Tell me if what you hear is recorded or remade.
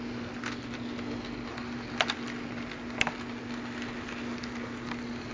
recorded